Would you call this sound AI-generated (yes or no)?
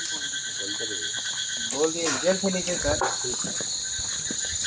no